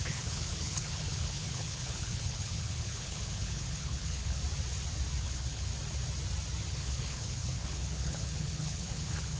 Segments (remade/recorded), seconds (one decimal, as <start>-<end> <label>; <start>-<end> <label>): 0.0-4.4 remade; 4.4-5.2 recorded; 5.2-5.7 remade; 5.7-6.7 recorded; 6.7-9.4 remade